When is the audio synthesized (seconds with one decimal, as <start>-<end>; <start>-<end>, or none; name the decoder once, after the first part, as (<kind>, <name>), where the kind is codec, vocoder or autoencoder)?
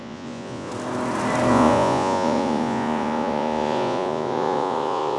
0.0-0.7 (vocoder, Vocos); 1.5-5.2